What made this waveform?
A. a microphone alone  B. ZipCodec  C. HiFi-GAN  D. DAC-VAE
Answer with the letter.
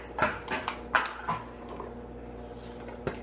A